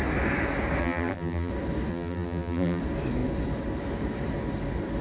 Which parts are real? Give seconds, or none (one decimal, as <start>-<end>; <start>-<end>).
0.0-0.8; 1.5-1.9; 2.8-5.0